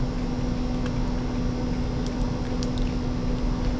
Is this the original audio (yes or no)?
yes